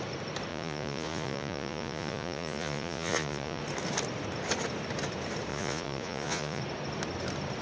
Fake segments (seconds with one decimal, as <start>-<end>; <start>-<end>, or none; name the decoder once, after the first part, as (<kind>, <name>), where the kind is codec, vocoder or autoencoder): 0.5-3.6 (vocoder, Vocos); 5.5-6.6